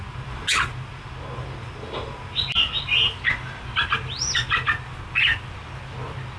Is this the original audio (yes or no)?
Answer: yes